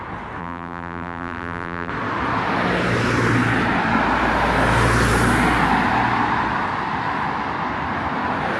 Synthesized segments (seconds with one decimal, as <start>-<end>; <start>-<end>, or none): 0.4-1.9